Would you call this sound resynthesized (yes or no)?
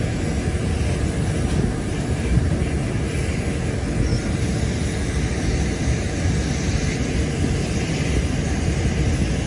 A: no